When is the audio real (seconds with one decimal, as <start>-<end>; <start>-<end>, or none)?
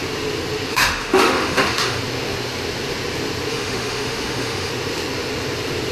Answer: 0.0-0.7; 2.0-3.5; 4.7-5.9